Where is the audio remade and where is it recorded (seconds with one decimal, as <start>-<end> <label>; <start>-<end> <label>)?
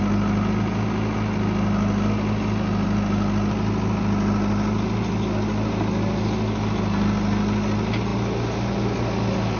0.0-9.6 recorded